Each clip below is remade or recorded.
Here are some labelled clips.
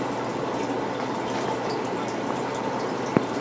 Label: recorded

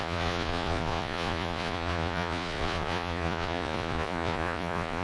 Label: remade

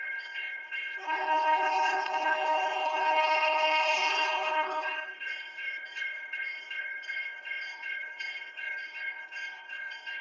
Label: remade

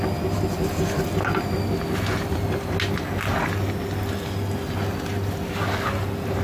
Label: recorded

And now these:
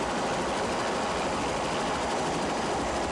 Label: recorded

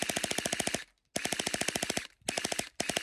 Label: recorded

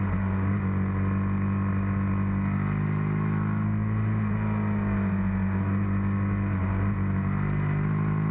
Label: recorded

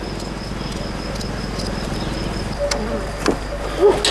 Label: recorded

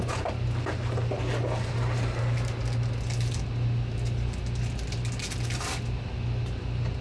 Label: recorded